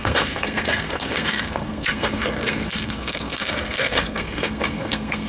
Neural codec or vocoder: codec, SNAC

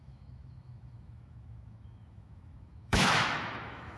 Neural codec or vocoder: autoencoder, DAC-VAE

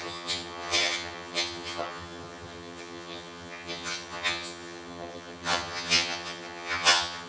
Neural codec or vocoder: vocoder, HiFi-GAN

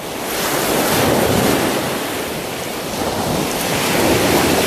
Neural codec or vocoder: none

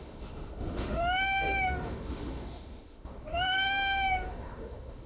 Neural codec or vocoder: autoencoder, DAC-VAE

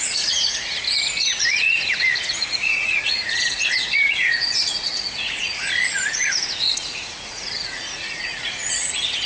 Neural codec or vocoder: vocoder, Vocos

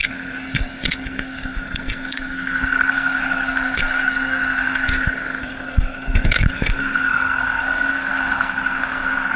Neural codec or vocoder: codec, SNAC